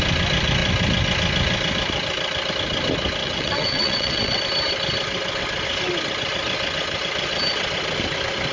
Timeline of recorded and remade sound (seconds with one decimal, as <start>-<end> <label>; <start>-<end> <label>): 0.0-3.2 recorded; 3.2-4.4 remade; 4.4-8.5 recorded